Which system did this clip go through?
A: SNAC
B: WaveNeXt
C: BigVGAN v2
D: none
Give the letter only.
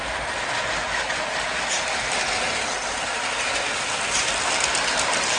D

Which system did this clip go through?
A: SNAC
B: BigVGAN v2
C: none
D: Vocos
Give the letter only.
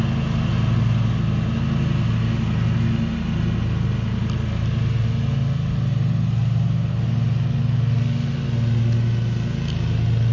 C